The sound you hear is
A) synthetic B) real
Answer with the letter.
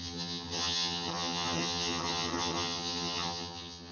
A